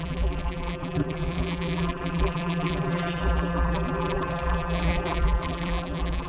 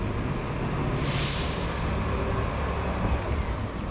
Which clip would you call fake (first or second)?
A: first